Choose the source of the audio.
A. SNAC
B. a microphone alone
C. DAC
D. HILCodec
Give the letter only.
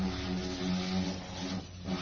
B